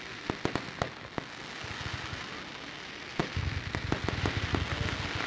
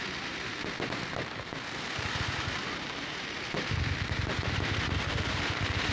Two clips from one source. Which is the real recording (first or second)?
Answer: first